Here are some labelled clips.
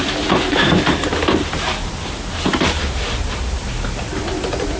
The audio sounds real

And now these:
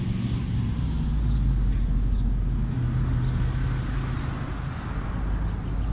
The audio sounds real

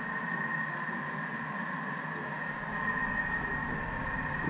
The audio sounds real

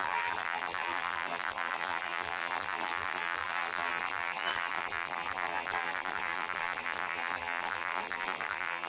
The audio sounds fake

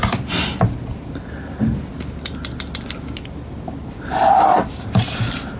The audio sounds real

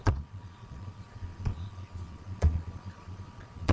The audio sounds fake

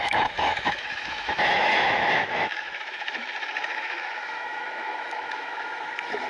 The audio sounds fake